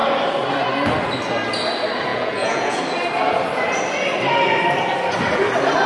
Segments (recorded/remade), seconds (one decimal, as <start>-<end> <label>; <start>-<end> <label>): 0.0-2.1 recorded; 2.1-2.8 remade; 2.8-5.9 recorded